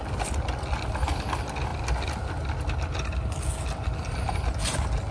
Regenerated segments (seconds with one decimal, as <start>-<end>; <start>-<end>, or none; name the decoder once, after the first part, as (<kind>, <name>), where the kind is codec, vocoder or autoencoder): none